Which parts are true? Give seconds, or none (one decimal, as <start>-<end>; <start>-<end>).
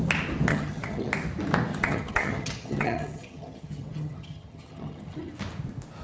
0.0-0.5; 1.1-1.7; 5.3-6.0